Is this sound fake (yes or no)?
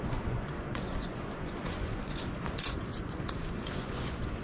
yes